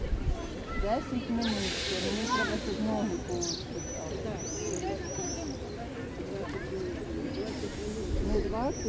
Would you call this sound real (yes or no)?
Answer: yes